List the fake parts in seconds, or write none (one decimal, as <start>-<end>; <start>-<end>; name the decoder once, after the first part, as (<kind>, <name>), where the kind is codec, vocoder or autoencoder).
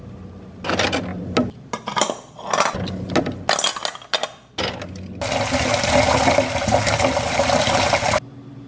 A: none